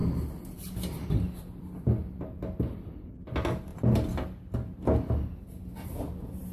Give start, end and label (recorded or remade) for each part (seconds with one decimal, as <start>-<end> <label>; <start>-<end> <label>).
0.0-6.5 recorded